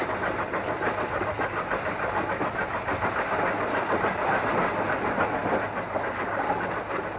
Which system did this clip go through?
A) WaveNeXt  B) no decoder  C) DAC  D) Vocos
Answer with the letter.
B